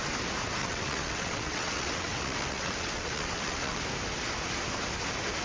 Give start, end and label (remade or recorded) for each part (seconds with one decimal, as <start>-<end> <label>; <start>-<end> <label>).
0.0-0.6 recorded; 0.6-3.8 remade; 3.8-5.4 recorded